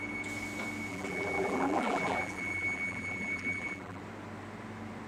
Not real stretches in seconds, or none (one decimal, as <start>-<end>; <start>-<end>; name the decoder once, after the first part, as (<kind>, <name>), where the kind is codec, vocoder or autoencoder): 0.9-4.0 (vocoder, BigVGAN v2)